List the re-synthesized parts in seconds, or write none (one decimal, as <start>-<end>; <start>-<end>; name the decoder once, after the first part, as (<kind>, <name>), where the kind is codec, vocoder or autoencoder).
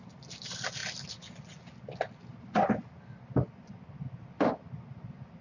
0.0-0.8 (vocoder, BigVGAN v2); 2.3-5.4